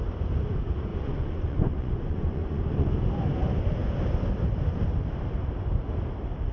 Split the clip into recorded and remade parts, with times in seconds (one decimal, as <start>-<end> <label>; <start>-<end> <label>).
0.0-0.9 recorded; 0.9-2.9 remade; 2.9-6.5 recorded